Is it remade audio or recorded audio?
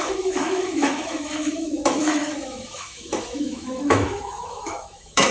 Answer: remade